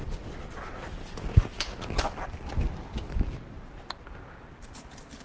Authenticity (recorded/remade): recorded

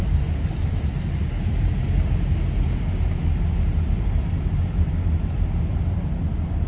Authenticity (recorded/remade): recorded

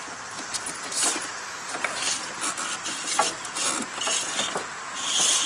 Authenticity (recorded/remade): recorded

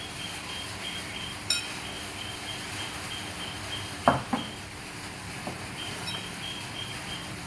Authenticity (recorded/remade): remade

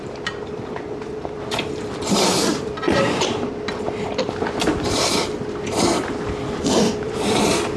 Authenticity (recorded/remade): remade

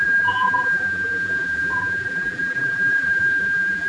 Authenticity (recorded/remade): remade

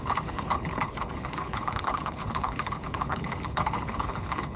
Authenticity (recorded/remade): remade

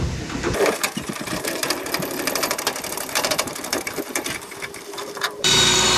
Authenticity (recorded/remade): remade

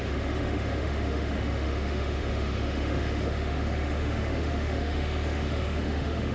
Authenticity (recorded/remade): remade